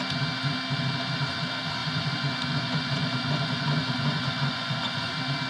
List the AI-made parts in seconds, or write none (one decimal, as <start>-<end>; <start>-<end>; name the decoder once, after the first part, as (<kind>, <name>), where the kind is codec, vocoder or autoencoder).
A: 1.8-5.1 (vocoder, Vocos)